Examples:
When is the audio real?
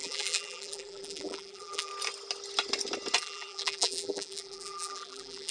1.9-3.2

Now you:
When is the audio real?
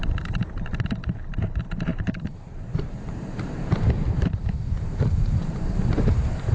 none